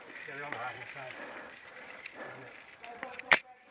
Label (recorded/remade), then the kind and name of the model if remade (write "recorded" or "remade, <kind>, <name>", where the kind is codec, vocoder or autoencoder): remade, vocoder, BigVGAN v2